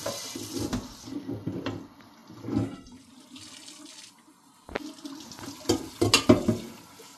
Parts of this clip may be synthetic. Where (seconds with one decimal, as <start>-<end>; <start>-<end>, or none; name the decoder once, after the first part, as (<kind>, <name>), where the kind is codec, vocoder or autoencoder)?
none